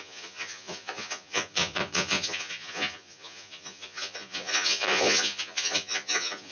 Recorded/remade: remade